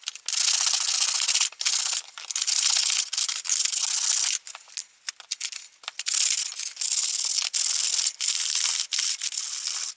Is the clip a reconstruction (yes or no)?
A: no